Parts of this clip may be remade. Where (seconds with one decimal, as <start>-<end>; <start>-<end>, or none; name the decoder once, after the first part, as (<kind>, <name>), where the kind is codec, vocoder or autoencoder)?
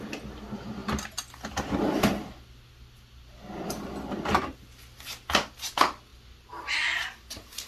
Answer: none